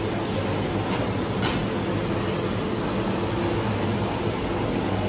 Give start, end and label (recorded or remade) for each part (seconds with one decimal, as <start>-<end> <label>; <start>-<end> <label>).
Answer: 0.0-5.1 recorded